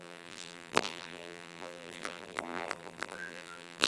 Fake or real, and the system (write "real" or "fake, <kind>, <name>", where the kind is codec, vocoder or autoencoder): fake, vocoder, BigVGAN v2